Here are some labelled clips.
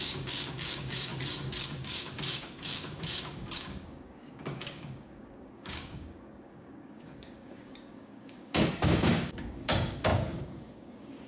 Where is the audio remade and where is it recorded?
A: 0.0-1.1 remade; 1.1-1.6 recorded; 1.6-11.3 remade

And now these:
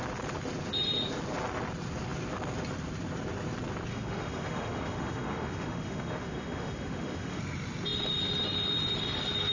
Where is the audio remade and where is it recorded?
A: 0.0-3.9 recorded; 3.9-7.4 remade; 7.4-9.5 recorded

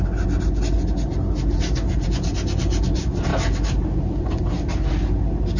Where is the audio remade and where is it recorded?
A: 0.0-5.6 recorded

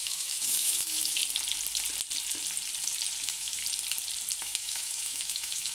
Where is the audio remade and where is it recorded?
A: 0.0-1.2 remade; 1.2-3.2 recorded; 3.2-3.6 remade; 3.6-4.4 recorded; 4.4-5.7 remade